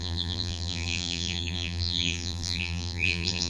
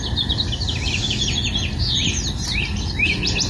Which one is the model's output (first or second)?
first